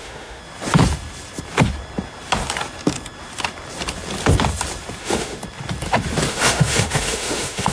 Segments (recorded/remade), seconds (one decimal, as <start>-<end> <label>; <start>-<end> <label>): 0.0-0.4 remade; 0.4-5.0 recorded; 5.0-5.4 remade; 5.4-6.3 recorded; 6.3-7.7 remade